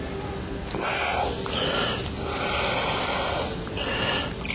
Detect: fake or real real